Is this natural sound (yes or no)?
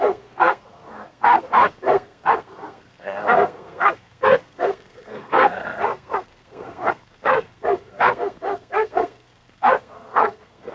no